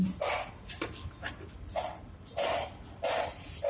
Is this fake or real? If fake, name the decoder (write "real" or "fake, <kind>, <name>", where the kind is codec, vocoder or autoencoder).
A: real